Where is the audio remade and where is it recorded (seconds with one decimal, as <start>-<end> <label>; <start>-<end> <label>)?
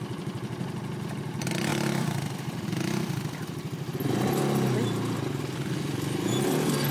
0.0-6.9 recorded